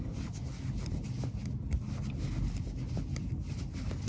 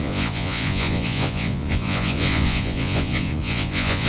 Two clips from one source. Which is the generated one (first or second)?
second